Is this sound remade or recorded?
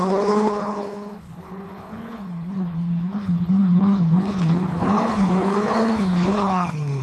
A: remade